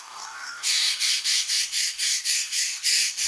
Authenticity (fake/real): fake